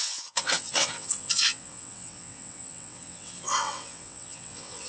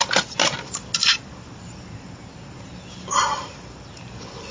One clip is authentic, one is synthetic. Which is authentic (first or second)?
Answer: second